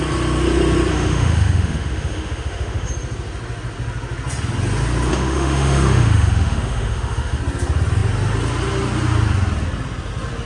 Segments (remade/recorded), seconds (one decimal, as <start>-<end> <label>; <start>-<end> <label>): 0.0-0.9 recorded; 0.9-2.9 remade; 2.9-5.1 recorded; 5.1-7.4 remade; 7.4-10.5 recorded